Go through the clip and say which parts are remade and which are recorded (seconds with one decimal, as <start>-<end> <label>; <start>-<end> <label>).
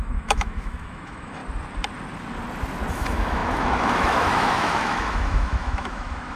0.0-1.4 remade; 1.4-2.9 recorded; 2.9-6.4 remade